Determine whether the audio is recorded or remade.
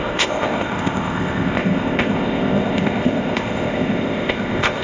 remade